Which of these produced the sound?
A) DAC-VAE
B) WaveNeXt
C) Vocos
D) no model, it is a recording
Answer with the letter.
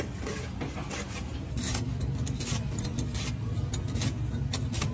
D